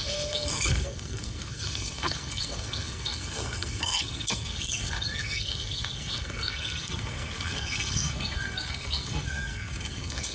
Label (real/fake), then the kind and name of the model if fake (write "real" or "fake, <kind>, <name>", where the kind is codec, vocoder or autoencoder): fake, codec, SNAC